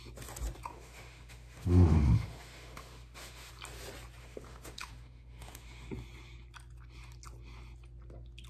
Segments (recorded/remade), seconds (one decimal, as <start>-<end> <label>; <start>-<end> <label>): 0.0-0.7 recorded; 0.7-3.5 remade; 3.5-4.2 recorded; 4.2-5.9 remade; 5.9-8.5 recorded